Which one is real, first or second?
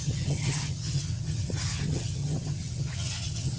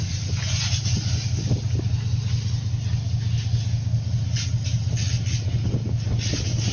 second